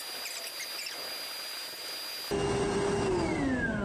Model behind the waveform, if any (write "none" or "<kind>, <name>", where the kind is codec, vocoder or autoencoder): none